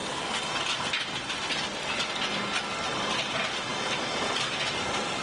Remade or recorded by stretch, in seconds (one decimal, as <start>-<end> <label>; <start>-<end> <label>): 0.0-3.1 recorded; 3.1-3.7 remade; 3.7-5.2 recorded